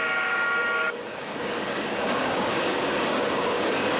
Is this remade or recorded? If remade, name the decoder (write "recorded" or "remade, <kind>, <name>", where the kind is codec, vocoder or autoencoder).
remade, codec, DAC